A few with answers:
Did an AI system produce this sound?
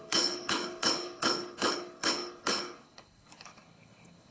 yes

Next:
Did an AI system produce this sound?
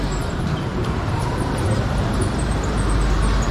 yes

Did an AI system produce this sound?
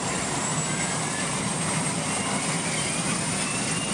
no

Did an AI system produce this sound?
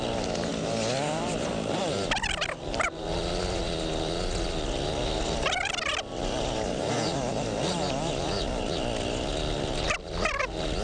no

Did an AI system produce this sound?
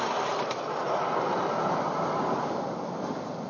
no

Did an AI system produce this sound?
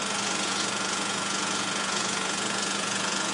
yes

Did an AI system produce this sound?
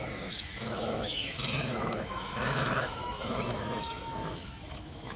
yes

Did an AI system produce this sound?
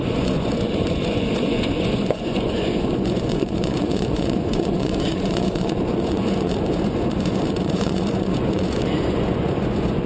yes